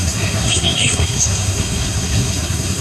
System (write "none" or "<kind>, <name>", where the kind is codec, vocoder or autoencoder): codec, SNAC